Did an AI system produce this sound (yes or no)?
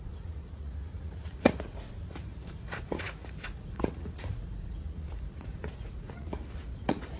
yes